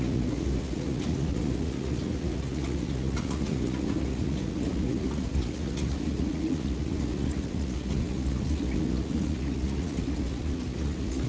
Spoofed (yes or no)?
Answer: yes